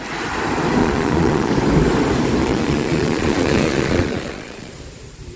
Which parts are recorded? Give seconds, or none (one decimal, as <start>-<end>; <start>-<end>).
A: 0.0-0.8; 1.5-2.4; 4.7-5.4